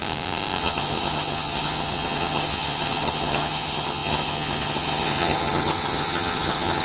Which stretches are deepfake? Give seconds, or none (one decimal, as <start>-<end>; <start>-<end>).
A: 0.6-6.8